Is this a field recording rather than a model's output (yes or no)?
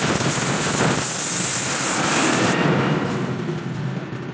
yes